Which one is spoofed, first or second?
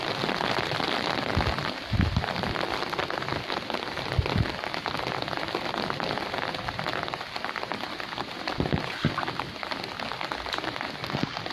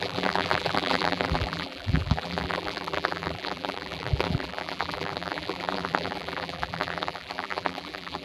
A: second